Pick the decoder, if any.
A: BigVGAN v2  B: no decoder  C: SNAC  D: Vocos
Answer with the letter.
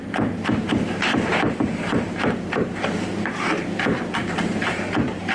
A